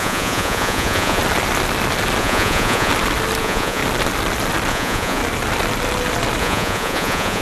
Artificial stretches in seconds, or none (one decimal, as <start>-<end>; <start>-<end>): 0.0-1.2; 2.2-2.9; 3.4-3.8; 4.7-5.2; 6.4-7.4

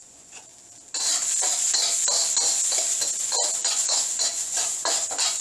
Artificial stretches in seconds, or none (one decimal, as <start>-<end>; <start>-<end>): 0.0-0.5; 3.7-5.4

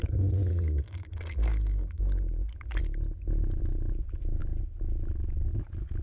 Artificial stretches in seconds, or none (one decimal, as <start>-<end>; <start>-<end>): 0.5-2.0